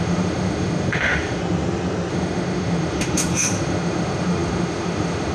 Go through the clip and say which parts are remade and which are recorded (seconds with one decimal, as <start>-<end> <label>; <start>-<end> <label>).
0.0-1.4 remade; 1.4-2.1 recorded; 2.1-5.3 remade